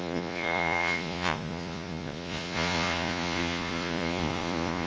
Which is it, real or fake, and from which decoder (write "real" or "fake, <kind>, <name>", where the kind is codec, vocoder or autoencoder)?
fake, vocoder, Vocos